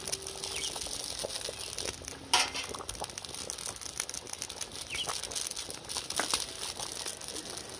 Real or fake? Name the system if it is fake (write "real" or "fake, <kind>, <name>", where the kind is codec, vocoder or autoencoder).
real